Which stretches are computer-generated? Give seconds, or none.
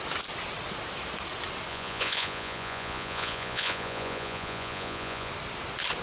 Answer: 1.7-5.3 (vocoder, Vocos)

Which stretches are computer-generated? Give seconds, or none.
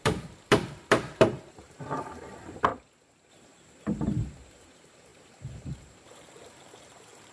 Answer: 0.0-2.7 (vocoder, BigVGAN v2); 3.3-7.3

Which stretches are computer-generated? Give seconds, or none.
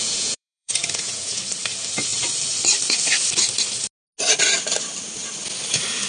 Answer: 0.0-1.4 (vocoder, Vocos)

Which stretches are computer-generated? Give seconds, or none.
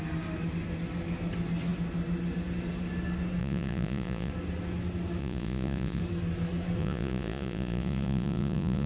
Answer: 3.4-4.3 (vocoder, Vocos); 5.2-6.0; 6.8-8.9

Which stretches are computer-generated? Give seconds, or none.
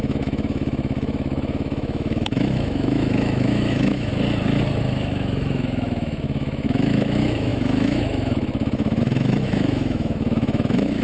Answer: 0.0-4.1 (autoencoder, DAC-VAE); 4.8-11.0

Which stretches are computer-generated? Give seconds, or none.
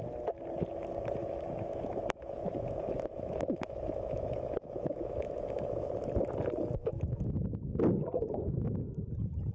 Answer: 1.2-5.9 (autoencoder, DAC-VAE); 6.8-7.8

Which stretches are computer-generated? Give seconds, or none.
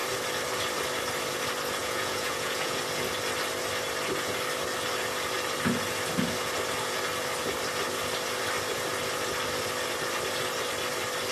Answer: 1.8-2.8 (vocoder, Vocos)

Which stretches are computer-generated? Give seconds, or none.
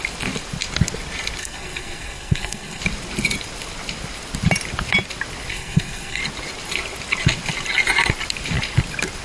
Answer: 1.4-2.8 (codec, SNAC); 5.5-6.2